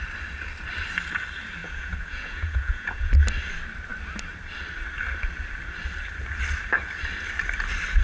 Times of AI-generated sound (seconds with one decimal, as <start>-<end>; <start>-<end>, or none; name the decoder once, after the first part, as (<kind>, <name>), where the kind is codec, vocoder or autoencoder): 1.6-3.1 (vocoder, Vocos)